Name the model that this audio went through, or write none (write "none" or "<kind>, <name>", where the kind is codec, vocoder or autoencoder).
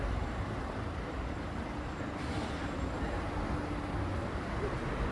vocoder, BigVGAN v2